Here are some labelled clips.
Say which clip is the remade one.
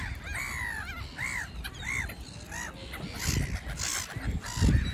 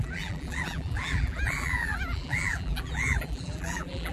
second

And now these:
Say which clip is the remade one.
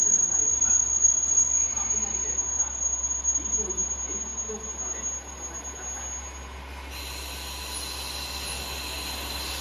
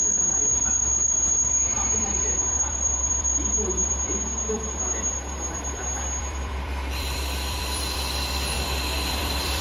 second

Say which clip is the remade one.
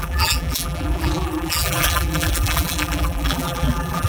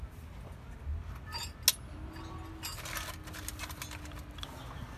first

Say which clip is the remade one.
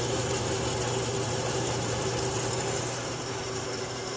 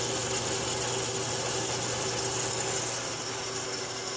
first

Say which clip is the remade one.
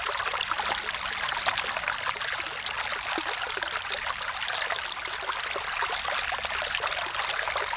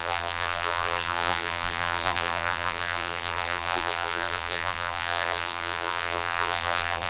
second